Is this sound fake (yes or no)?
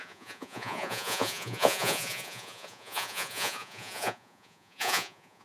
yes